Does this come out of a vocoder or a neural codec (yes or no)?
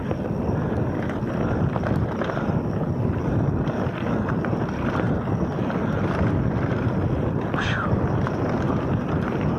no